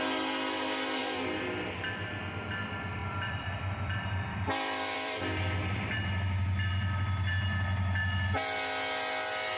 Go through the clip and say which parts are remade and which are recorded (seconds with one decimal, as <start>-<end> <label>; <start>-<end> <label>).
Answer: 0.0-3.0 recorded; 3.0-5.2 remade; 5.2-9.6 recorded